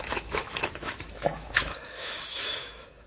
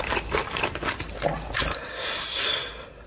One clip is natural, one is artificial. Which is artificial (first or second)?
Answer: first